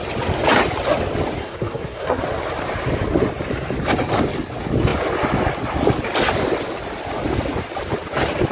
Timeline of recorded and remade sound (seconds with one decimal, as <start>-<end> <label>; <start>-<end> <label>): 0.0-1.4 recorded; 1.4-2.2 remade; 2.2-8.5 recorded